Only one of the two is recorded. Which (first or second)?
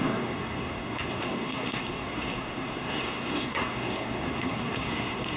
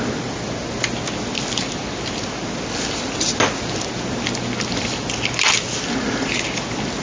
second